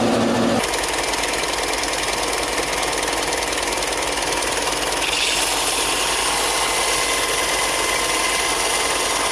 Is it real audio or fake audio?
real